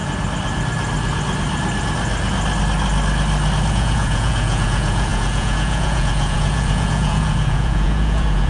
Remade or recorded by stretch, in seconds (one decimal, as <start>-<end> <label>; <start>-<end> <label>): 0.0-3.7 recorded; 3.7-8.5 remade